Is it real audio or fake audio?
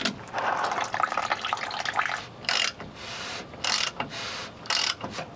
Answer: real